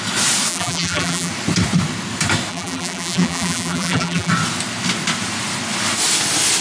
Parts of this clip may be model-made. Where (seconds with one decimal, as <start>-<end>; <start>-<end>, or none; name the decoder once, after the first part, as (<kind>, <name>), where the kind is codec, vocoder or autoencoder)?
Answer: 0.5-1.3 (vocoder, BigVGAN v2); 2.5-4.3